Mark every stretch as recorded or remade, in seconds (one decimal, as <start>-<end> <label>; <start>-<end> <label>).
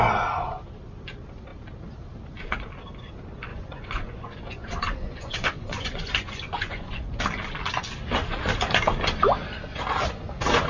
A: 0.0-3.5 recorded; 3.5-7.2 remade; 7.2-10.7 recorded